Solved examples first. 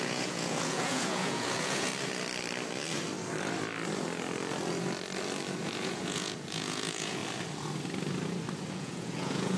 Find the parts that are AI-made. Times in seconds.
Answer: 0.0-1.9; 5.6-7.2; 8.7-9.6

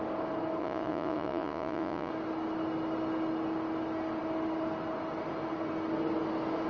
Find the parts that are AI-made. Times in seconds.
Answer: 0.6-2.1

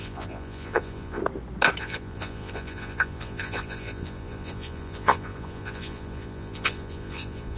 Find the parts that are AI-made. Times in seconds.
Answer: 0.0-1.2; 1.8-7.6

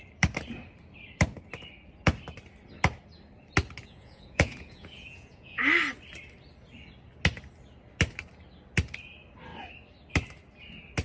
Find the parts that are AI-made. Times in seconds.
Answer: 3.8-5.6

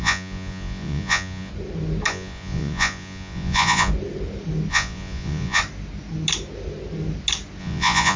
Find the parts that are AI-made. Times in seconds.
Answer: 0.0-1.5; 2.1-3.9; 4.7-5.6; 7.6-8.2